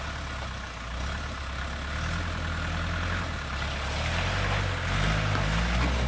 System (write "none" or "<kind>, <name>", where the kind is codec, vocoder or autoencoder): none